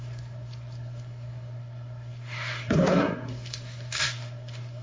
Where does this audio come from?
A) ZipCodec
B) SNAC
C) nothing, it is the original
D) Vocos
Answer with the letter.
B